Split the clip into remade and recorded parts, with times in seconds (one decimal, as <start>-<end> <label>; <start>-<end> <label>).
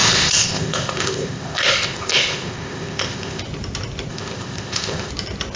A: 0.0-3.4 remade; 3.4-4.1 recorded; 4.1-5.1 remade; 5.1-5.6 recorded